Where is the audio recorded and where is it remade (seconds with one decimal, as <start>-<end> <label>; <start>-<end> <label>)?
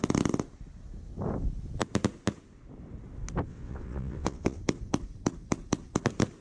0.0-3.5 recorded; 3.5-4.6 remade; 4.6-6.4 recorded